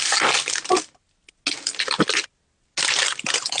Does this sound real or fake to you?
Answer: real